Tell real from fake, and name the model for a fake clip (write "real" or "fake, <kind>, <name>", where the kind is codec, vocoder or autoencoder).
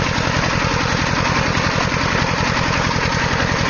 real